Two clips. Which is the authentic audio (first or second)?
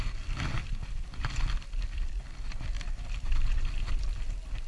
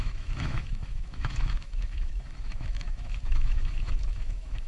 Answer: first